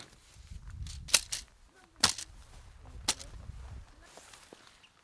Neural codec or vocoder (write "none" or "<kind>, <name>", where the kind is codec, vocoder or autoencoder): none